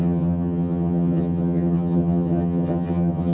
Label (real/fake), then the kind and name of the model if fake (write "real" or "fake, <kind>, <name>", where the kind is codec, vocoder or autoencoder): fake, vocoder, HiFi-GAN